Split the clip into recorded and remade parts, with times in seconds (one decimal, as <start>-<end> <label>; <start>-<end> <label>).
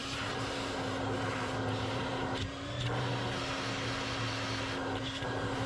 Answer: 0.0-3.3 remade; 3.3-4.8 recorded; 4.8-5.7 remade